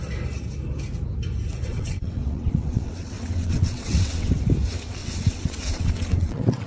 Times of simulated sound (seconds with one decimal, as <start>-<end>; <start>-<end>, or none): 1.7-4.4; 5.0-6.7